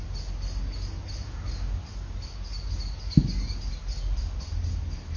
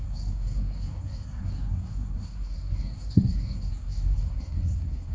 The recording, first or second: first